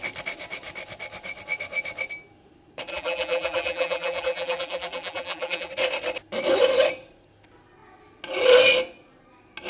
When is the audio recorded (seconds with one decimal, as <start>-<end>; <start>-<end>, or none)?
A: 0.0-2.9; 5.7-9.7